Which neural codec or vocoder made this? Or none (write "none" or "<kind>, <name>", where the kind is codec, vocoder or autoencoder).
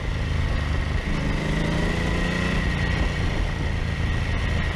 none